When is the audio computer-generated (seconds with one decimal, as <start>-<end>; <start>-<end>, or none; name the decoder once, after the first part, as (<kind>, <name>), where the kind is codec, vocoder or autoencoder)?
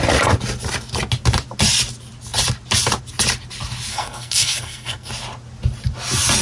3.9-5.1 (codec, SNAC)